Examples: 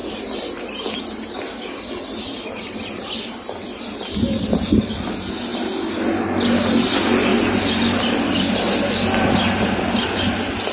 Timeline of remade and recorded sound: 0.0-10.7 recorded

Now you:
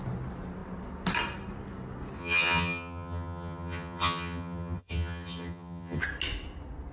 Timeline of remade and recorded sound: 0.0-2.2 recorded; 2.2-6.0 remade; 6.0-6.9 recorded

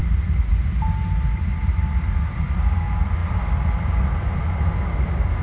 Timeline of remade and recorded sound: 0.0-0.5 remade; 0.5-3.2 recorded; 3.2-4.0 remade; 4.0-5.4 recorded